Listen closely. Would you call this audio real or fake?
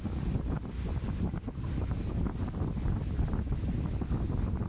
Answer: real